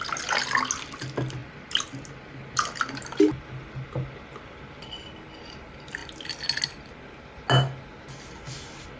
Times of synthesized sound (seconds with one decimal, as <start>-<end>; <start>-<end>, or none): none